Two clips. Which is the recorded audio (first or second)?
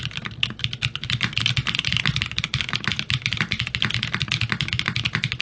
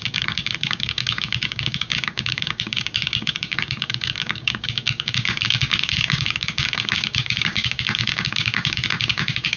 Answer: first